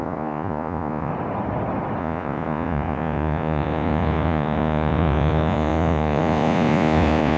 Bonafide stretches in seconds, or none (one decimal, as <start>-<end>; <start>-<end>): 1.1-2.0